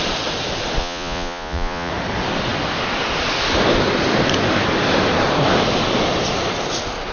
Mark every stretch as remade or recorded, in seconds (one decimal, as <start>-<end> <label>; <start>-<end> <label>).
0.0-0.8 recorded; 0.8-1.9 remade; 1.9-7.1 recorded